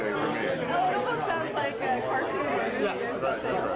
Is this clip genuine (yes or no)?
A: yes